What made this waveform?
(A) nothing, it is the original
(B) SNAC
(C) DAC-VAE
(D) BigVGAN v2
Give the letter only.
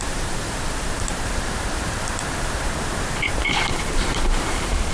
D